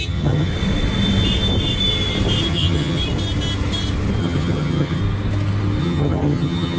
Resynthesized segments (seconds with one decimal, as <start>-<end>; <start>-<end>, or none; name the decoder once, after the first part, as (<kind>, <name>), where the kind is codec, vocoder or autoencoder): 0.0-0.5 (vocoder, HiFi-GAN); 2.5-3.0; 4.2-5.0; 5.8-6.8

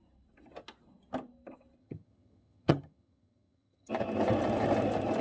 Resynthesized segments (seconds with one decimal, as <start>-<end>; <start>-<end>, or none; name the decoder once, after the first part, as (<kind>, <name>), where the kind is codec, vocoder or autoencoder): 1.8-3.9 (vocoder, HiFi-GAN)

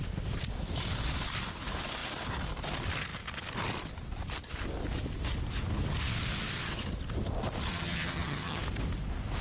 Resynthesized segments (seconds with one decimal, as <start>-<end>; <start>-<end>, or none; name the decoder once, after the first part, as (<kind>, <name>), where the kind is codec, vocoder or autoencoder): 7.7-8.6 (vocoder, HiFi-GAN)

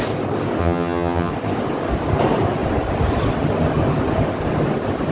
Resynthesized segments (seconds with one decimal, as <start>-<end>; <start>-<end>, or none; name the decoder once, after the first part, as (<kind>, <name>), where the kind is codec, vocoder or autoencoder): 0.6-1.3 (vocoder, HiFi-GAN)